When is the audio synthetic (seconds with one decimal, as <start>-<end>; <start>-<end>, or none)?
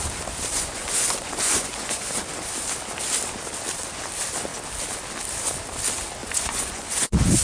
0.5-2.1; 6.2-7.4